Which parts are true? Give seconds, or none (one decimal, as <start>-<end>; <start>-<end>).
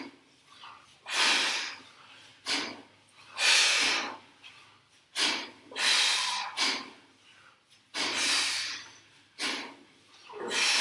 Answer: 0.0-10.8